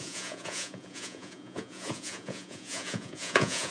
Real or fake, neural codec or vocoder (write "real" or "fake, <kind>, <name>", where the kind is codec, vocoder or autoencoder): fake, vocoder, Vocos